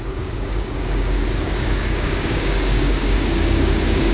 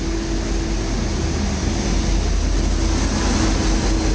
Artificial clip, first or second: first